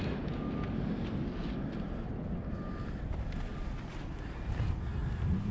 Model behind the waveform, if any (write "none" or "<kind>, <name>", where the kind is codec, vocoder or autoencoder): none